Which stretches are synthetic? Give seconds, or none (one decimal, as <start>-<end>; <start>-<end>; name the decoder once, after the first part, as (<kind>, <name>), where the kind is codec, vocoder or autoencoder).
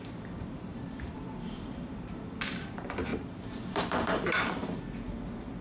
0.0-5.6 (vocoder, BigVGAN v2)